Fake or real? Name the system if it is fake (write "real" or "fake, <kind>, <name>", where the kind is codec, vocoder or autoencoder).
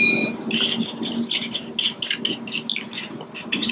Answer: real